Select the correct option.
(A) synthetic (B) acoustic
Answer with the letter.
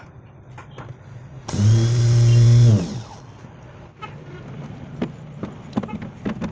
B